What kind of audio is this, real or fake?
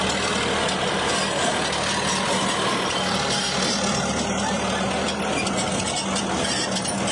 real